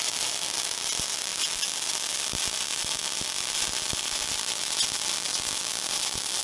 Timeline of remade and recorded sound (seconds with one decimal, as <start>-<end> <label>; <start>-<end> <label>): 0.0-6.4 recorded